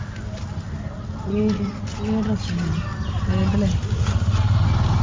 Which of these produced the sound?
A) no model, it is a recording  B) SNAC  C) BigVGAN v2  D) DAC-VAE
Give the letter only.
A